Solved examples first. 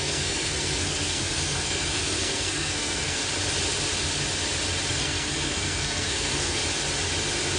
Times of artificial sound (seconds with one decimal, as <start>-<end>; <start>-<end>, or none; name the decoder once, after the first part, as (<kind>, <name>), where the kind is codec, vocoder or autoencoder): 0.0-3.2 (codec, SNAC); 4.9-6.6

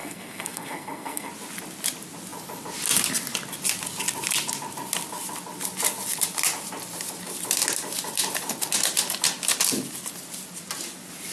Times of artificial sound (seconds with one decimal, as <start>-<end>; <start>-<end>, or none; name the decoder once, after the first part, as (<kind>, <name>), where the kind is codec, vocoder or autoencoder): 0.0-1.3 (codec, SNAC)

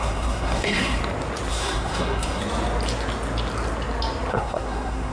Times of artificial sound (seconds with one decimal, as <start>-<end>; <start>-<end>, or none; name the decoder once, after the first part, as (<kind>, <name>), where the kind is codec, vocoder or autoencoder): 0.0-1.0 (codec, SNAC); 1.5-2.4; 4.3-5.1

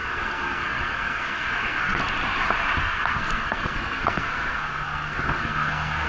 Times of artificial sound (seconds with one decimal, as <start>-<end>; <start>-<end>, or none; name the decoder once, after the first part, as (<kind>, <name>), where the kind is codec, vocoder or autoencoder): 0.0-2.0 (codec, SNAC); 2.8-6.1

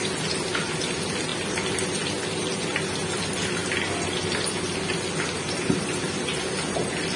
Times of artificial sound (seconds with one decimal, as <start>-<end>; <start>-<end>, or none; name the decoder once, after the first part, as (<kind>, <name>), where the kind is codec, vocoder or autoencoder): none